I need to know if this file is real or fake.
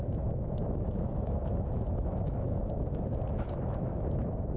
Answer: fake